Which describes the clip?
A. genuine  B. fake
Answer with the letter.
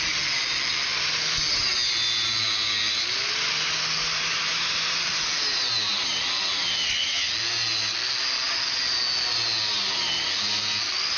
A